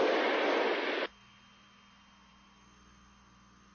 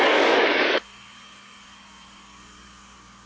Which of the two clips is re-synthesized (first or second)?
second